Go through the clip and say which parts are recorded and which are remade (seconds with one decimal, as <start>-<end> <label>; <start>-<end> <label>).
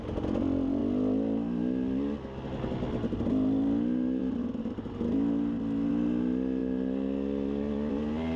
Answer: 0.0-8.4 recorded